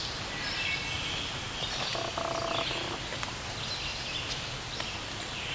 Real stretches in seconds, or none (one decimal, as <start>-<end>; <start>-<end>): 0.0-5.5